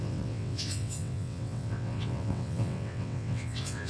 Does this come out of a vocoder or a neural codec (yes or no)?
yes